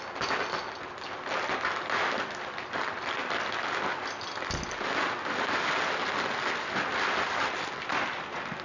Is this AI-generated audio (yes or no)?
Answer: no